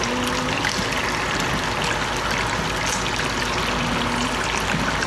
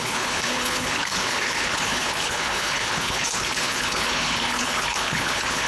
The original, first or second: first